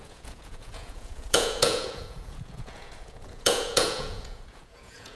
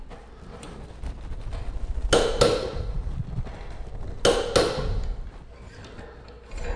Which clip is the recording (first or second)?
second